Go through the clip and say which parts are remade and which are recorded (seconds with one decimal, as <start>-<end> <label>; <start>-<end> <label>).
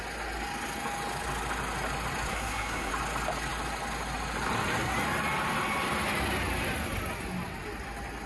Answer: 0.0-2.3 recorded; 2.3-2.9 remade; 2.9-8.3 recorded